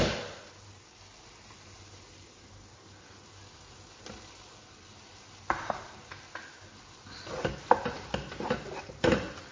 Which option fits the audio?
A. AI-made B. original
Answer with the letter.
B